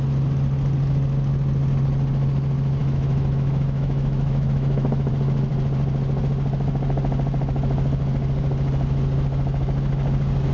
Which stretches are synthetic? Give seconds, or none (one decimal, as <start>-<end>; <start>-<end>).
2.8-5.1